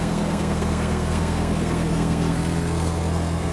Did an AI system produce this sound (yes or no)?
yes